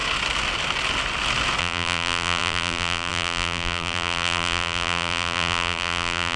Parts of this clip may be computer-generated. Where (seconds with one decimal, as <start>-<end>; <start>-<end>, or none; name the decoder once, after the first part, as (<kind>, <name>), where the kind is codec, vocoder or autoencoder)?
1.6-6.4 (vocoder, BigVGAN v2)